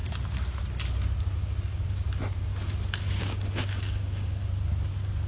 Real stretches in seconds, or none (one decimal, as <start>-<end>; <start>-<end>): 0.0-3.2; 4.4-5.3